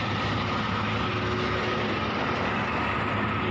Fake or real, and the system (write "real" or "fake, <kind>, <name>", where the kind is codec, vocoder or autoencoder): real